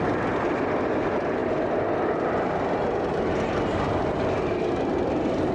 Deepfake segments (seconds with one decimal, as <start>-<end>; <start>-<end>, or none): none